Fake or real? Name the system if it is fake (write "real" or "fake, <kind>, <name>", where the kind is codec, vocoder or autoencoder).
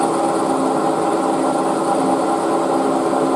real